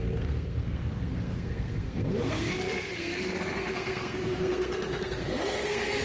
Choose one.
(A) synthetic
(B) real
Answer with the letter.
A